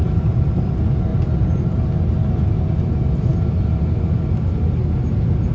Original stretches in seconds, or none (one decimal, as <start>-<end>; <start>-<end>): 0.0-1.1; 1.8-5.5